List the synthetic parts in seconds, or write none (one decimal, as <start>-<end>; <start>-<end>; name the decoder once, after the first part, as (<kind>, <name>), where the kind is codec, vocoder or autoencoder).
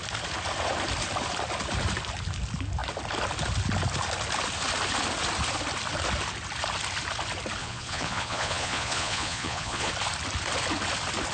7.6-9.9 (vocoder, Vocos)